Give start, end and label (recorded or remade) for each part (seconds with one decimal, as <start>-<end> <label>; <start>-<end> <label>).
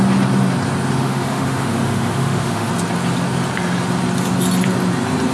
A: 0.0-1.0 recorded; 1.0-2.7 remade; 2.7-5.3 recorded